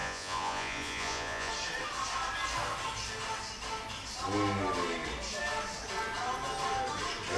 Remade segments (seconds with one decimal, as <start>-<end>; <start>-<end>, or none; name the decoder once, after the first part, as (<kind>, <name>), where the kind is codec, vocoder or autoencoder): 0.0-1.5 (vocoder, Vocos)